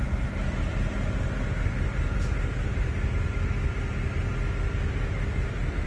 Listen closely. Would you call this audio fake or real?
real